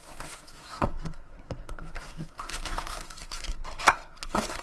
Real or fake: fake